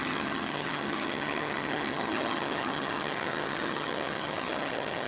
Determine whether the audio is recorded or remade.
remade